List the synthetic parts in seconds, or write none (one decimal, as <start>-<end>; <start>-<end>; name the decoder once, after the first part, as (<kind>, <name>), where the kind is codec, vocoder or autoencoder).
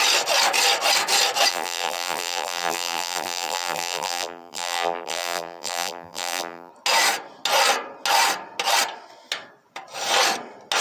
1.5-6.7 (vocoder, BigVGAN v2)